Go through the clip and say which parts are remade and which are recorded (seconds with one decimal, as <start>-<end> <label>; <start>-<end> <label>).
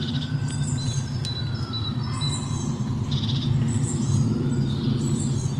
0.0-5.6 recorded